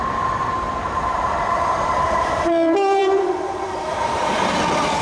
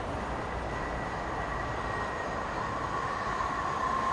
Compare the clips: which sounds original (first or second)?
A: second